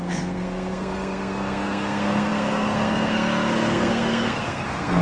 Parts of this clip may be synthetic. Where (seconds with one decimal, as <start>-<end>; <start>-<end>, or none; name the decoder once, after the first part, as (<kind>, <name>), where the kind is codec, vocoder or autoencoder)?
0.0-5.0 (codec, SNAC)